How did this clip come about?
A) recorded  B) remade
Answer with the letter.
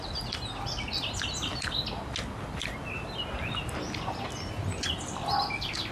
A